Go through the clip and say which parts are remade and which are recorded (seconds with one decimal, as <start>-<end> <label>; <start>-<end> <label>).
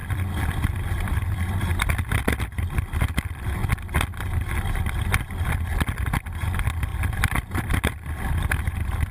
0.0-6.9 recorded; 6.9-8.6 remade; 8.6-9.1 recorded